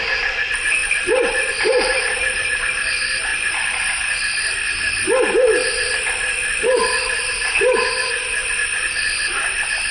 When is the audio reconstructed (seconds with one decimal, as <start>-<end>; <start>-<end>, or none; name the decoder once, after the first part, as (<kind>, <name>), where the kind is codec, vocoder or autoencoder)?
0.0-9.9 (vocoder, BigVGAN v2)